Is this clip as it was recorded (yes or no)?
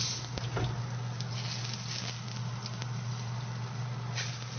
yes